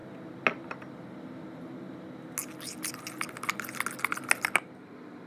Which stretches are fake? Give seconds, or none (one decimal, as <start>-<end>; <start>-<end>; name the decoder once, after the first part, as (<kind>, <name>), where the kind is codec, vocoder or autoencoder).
none